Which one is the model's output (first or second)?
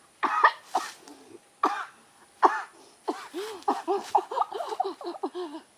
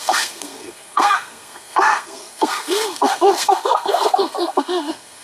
second